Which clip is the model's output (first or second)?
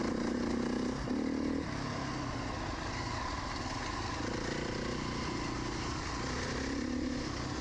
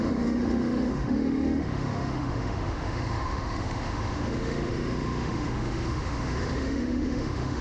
second